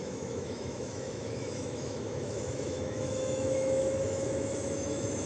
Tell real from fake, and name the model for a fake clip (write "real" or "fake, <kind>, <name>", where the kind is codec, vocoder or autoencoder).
fake, autoencoder, DAC-VAE